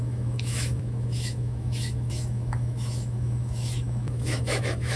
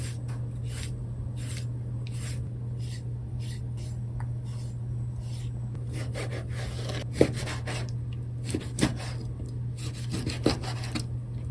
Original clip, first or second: second